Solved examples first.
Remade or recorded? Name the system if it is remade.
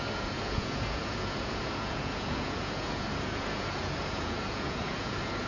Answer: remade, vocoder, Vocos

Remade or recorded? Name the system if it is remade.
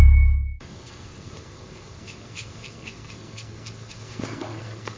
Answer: remade, codec, SNAC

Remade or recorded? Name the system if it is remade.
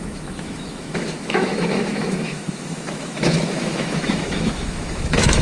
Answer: remade, autoencoder, DAC-VAE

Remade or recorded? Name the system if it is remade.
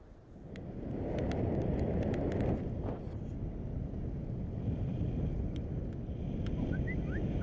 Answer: recorded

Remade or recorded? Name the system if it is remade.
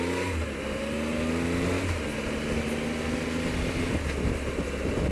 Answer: recorded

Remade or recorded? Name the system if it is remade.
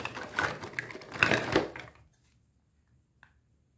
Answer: recorded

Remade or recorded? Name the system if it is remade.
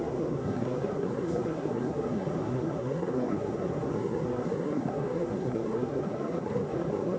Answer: remade, codec, SNAC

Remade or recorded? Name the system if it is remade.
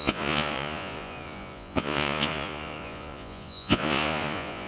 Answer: remade, vocoder, Vocos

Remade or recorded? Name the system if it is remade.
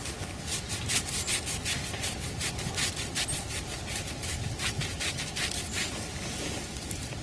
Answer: recorded